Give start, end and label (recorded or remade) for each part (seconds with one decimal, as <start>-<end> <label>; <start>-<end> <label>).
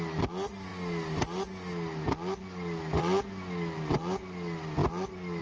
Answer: 0.0-5.4 recorded